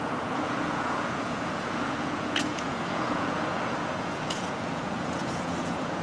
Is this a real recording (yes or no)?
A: no